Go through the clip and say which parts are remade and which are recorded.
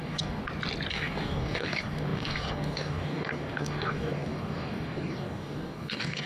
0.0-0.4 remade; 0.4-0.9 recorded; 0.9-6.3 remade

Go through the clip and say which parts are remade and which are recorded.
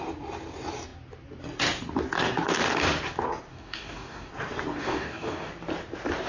0.0-3.5 recorded; 3.5-4.3 remade; 4.3-4.8 recorded; 4.8-5.5 remade; 5.5-6.3 recorded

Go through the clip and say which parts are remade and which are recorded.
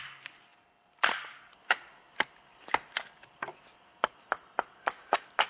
0.0-5.5 recorded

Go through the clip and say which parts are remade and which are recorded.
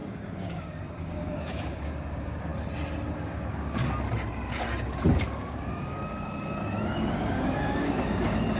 0.0-2.5 remade; 2.5-3.2 recorded; 3.2-3.8 remade; 3.8-5.2 recorded; 5.2-8.6 remade